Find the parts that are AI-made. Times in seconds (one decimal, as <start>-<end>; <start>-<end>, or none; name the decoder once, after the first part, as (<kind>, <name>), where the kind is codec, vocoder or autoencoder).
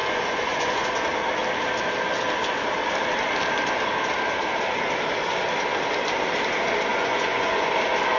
0.0-0.9 (vocoder, Vocos); 6.9-7.7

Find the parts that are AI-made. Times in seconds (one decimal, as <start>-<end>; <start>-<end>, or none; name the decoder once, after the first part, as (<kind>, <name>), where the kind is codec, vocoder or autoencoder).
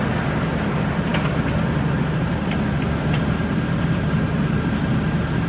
none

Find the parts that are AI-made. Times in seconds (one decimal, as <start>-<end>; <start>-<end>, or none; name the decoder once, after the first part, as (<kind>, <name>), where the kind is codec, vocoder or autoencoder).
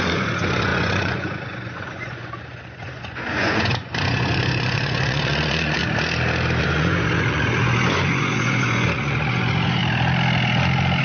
0.0-5.8 (vocoder, Vocos); 6.6-9.8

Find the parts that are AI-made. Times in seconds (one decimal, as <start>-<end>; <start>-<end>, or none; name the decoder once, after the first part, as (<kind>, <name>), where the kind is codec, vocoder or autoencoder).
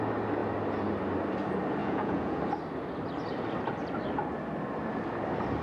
1.8-2.4 (vocoder, Vocos)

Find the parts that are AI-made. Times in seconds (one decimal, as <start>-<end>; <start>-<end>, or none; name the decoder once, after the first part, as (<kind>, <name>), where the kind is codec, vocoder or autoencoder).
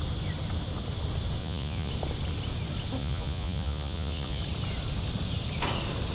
1.4-1.9 (vocoder, Vocos); 3.0-4.4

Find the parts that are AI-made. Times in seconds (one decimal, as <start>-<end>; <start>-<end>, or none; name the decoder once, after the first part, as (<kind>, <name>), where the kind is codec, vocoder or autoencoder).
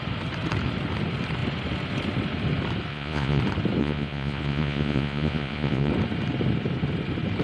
2.9-3.4 (vocoder, Vocos); 3.8-5.9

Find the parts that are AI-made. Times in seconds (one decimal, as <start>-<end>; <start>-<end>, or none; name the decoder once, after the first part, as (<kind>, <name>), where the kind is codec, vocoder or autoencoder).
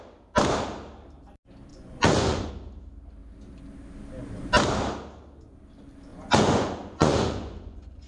1.7-2.5 (vocoder, Vocos); 6.1-8.1